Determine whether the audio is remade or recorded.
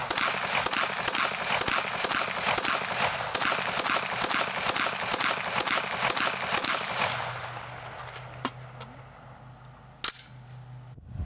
recorded